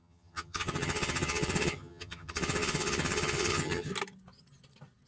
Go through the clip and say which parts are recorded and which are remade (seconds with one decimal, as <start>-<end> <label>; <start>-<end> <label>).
0.0-3.9 remade; 3.9-5.1 recorded